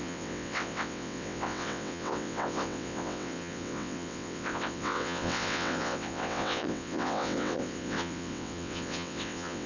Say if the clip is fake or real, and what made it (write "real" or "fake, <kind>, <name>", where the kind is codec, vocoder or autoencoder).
fake, vocoder, WaveNeXt